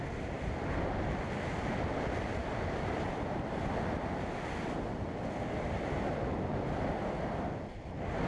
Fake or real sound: real